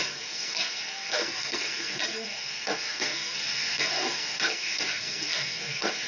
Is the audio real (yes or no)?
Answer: no